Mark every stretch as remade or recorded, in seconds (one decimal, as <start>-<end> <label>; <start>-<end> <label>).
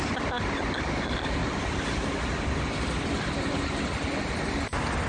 0.0-5.1 recorded